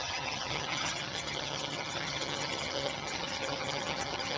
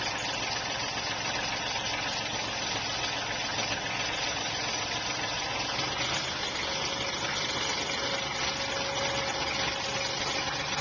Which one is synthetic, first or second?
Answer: first